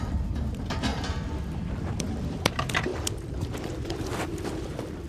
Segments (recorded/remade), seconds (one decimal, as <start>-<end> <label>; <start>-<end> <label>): 0.0-0.9 remade; 0.9-2.0 recorded; 2.0-5.1 remade